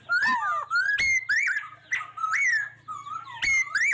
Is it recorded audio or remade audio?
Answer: recorded